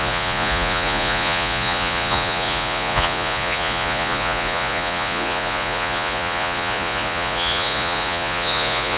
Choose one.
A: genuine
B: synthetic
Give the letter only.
B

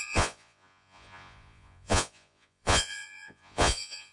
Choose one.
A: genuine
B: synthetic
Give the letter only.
B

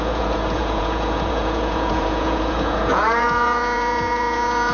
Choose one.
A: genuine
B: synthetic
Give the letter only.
B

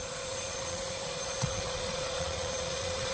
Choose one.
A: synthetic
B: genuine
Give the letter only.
A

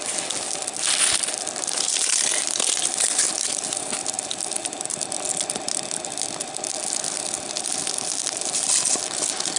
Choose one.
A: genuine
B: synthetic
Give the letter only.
A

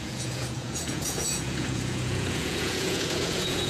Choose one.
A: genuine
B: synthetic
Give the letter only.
B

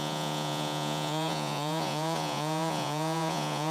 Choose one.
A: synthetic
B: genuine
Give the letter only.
A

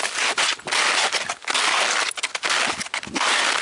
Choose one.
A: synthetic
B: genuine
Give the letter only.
B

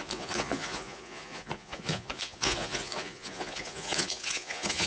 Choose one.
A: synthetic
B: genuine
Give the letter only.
A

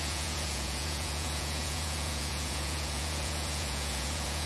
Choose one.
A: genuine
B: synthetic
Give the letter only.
B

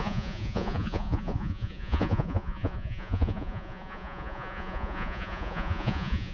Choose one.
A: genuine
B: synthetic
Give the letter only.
B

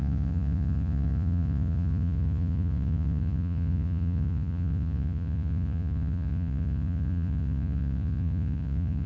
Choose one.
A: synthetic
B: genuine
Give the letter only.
A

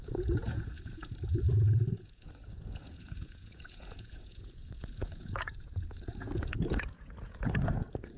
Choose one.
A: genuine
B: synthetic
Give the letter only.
B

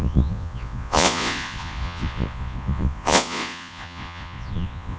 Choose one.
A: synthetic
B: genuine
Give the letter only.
A